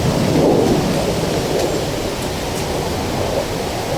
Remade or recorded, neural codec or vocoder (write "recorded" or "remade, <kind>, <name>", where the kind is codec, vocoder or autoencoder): recorded